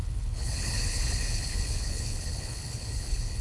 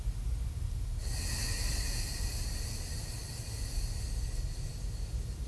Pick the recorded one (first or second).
second